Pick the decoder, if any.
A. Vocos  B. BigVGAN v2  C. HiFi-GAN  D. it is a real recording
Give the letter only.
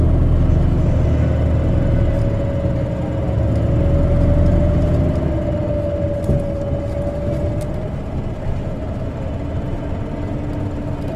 D